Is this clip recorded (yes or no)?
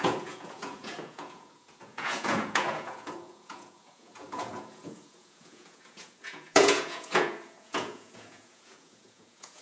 no